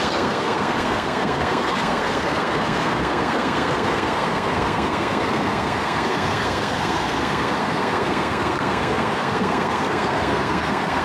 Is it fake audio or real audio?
fake